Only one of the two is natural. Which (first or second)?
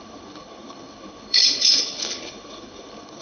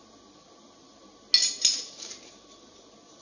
second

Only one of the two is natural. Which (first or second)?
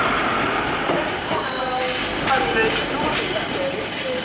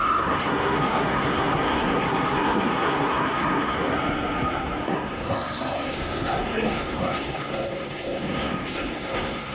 first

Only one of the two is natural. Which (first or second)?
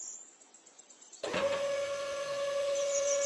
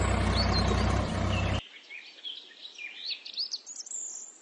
second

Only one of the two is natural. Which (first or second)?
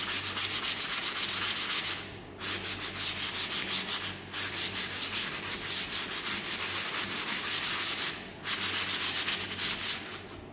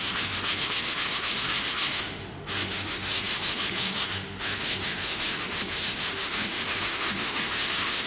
first